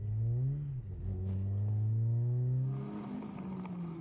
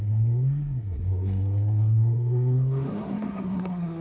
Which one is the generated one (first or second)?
second